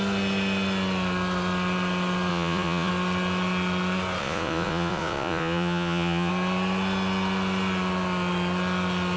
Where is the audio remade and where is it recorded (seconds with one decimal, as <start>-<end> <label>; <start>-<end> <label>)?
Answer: 0.0-2.3 recorded; 2.3-2.9 remade; 2.9-4.2 recorded; 4.2-6.3 remade; 6.3-9.2 recorded

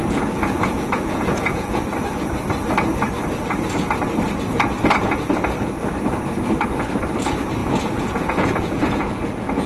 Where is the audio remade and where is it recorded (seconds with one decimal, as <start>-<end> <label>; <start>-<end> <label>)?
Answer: 0.0-1.8 remade; 1.8-7.6 recorded; 7.6-9.7 remade

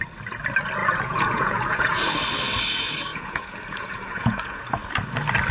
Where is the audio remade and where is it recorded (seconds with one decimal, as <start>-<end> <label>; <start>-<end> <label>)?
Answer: 0.0-0.8 recorded; 0.8-2.1 remade; 2.1-3.1 recorded; 3.1-4.6 remade; 4.6-5.5 recorded

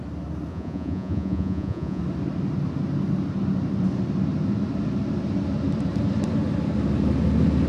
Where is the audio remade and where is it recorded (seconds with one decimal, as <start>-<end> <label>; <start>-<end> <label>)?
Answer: 0.0-0.5 recorded; 0.5-2.0 remade; 2.0-7.7 recorded

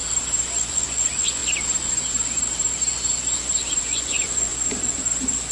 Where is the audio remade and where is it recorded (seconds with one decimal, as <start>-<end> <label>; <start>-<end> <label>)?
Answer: 0.0-0.6 recorded; 0.6-1.4 remade; 1.4-3.8 recorded; 3.8-4.5 remade; 4.5-5.5 recorded